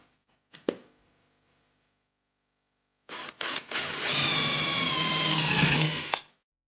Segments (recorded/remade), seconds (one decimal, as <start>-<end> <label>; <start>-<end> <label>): 0.0-5.3 recorded; 5.3-6.3 remade; 6.3-6.7 recorded